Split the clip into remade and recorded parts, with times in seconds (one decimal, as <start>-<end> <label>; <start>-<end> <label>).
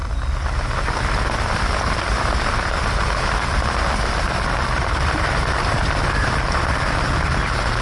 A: 0.0-7.8 remade